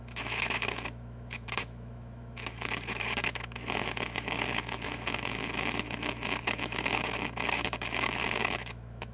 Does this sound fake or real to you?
fake